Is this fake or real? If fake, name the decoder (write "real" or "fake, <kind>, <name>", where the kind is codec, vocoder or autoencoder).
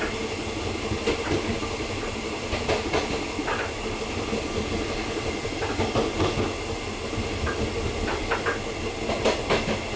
real